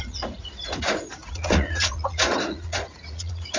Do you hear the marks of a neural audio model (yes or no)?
yes